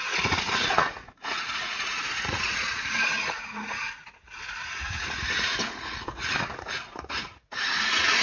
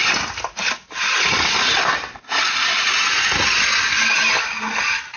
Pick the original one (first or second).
second